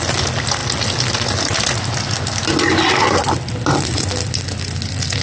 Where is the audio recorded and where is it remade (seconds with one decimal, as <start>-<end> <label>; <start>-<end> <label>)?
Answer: 0.0-5.2 recorded